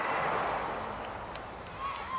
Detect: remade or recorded recorded